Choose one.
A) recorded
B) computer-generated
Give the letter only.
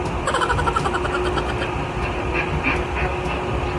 A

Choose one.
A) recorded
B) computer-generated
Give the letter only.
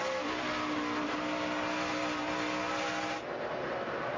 A